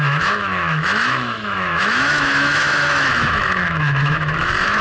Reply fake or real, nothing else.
fake